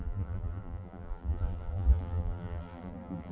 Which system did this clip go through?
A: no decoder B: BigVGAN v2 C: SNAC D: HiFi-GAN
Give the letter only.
B